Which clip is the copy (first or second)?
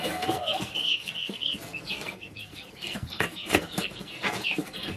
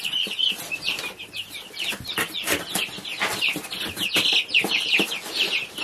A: first